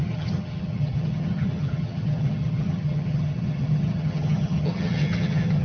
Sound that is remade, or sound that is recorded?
remade